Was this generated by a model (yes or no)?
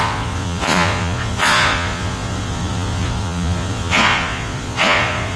yes